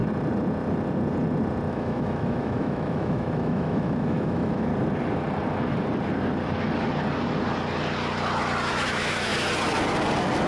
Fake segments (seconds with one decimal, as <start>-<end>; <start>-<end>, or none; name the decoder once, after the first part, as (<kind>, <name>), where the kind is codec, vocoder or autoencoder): 1.7-4.7 (autoencoder, DAC-VAE); 8.7-9.3